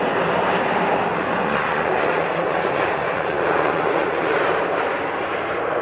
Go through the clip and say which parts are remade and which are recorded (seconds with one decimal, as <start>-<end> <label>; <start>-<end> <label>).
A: 0.0-1.1 recorded; 1.1-4.5 remade; 4.5-5.8 recorded